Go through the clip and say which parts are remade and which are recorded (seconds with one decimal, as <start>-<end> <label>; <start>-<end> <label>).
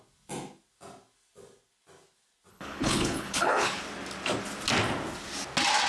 0.0-2.5 recorded; 2.5-3.8 remade; 3.8-5.9 recorded